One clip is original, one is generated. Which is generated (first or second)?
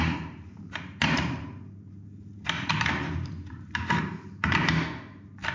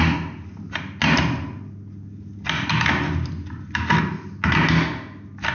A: first